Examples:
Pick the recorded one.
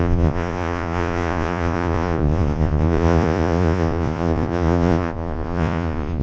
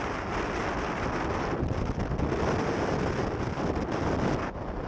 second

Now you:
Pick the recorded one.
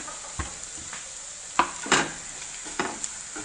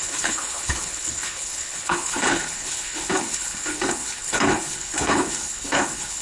first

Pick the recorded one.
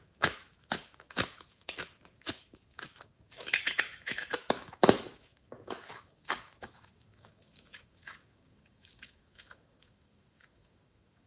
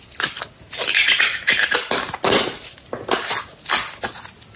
second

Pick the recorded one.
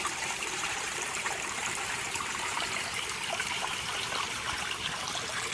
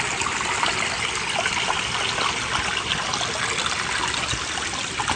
second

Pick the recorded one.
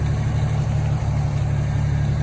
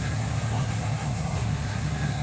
first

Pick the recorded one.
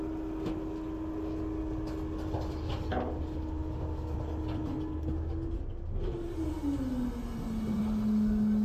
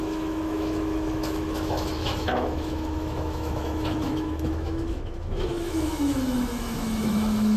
first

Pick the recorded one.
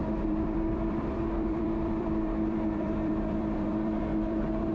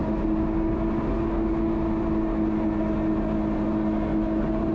second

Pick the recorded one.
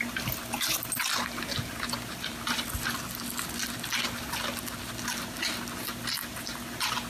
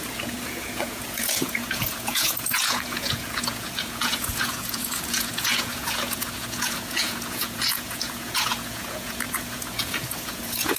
first